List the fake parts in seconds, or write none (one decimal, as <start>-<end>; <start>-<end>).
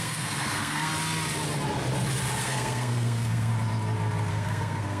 0.0-0.9; 2.4-3.5; 4.3-5.0